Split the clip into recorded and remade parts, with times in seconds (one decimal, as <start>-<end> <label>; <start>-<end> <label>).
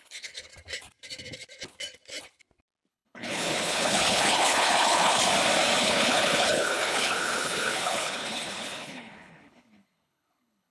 0.0-0.5 remade; 0.5-2.9 recorded; 2.9-5.2 remade; 5.2-5.8 recorded; 5.8-10.7 remade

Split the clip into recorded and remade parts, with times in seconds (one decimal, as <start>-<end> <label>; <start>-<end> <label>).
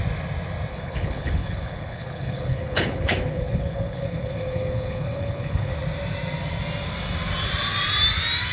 0.0-0.7 recorded; 0.7-5.7 remade; 5.7-8.5 recorded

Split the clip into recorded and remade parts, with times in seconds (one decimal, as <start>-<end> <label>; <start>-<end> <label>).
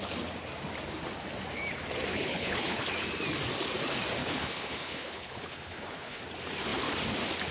0.0-2.1 recorded; 2.1-2.8 remade; 2.8-4.2 recorded; 4.2-6.2 remade; 6.2-7.5 recorded